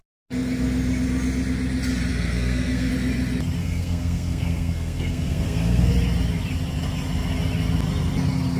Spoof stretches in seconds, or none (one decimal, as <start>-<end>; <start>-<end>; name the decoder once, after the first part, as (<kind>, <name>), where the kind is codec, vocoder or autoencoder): 2.1-2.9 (codec, SNAC); 3.6-5.9